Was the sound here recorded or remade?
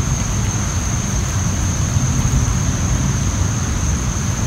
remade